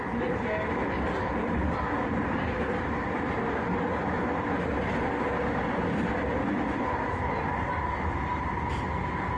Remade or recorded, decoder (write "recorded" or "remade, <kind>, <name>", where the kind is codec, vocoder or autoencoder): recorded